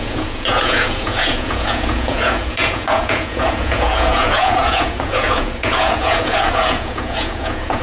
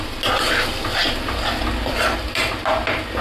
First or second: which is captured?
second